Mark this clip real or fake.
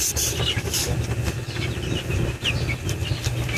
real